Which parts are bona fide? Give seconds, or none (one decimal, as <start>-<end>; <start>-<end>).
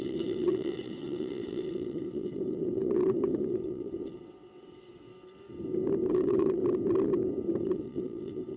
5.1-6.1; 6.6-7.6